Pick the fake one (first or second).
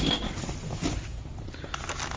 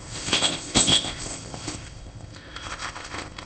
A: second